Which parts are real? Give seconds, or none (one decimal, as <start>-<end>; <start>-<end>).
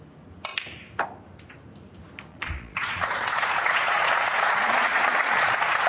0.0-2.3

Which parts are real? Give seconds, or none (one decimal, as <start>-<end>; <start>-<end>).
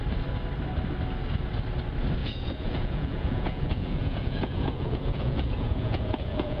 0.0-2.2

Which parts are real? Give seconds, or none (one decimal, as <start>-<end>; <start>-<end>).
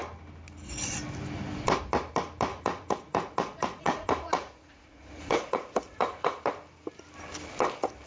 0.0-2.5; 6.4-8.1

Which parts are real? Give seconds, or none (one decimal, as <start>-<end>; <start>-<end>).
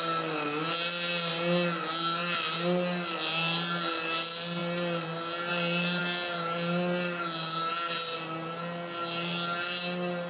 0.0-10.3